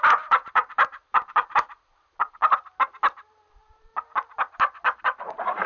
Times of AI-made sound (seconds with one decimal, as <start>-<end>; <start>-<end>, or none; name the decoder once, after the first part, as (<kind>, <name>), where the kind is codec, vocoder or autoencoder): 0.0-2.4 (vocoder, BigVGAN v2); 3.5-3.9; 5.0-5.7